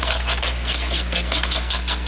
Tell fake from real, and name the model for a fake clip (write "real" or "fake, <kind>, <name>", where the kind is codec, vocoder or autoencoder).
fake, codec, SNAC